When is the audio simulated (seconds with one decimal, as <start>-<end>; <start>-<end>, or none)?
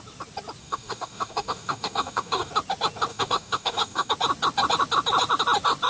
0.6-2.5; 3.1-4.1